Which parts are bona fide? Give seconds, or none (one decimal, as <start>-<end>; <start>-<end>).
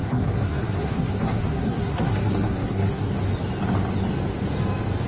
3.1-5.1